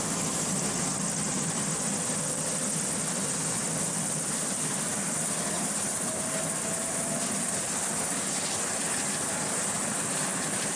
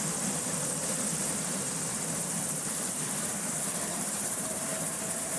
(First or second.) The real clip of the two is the first